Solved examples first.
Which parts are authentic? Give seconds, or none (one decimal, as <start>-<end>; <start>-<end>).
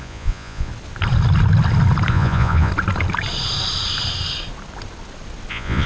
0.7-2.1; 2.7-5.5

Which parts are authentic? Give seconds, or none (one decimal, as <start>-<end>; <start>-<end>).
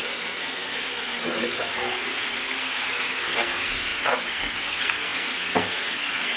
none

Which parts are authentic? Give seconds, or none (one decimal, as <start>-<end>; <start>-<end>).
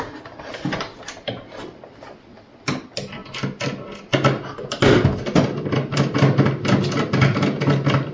0.0-8.1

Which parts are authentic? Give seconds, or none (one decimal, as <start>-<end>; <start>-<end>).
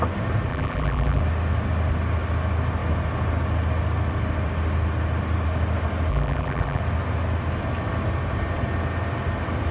0.0-0.5; 1.2-6.1; 6.8-9.7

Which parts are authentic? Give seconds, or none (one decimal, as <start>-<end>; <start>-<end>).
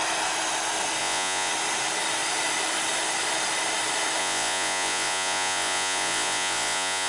0.0-1.0; 1.5-4.2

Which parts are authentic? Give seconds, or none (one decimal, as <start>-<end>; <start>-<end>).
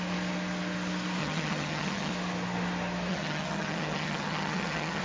0.0-1.2; 2.1-3.1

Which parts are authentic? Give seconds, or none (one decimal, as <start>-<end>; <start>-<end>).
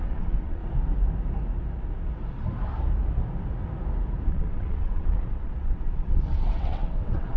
0.6-4.3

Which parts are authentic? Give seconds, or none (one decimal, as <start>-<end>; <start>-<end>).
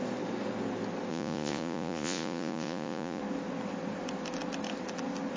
0.0-1.1; 3.2-5.4